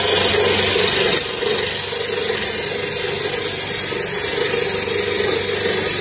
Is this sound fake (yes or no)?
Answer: no